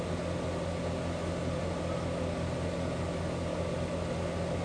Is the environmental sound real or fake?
real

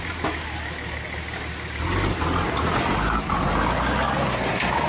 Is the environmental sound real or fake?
real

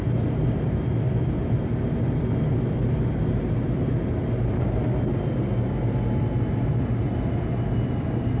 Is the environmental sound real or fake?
real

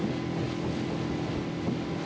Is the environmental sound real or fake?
real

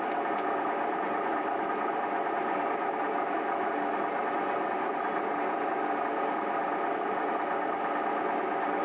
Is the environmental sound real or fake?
real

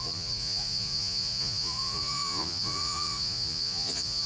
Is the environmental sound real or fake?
fake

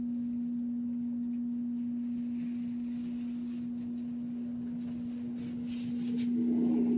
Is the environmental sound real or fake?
real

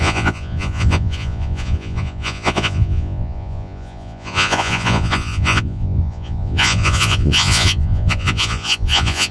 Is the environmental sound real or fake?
fake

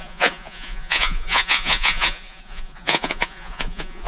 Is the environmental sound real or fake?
fake